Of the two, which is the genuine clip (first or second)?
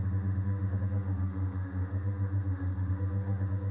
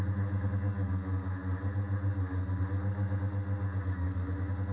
second